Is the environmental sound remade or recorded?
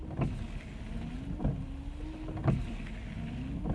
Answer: recorded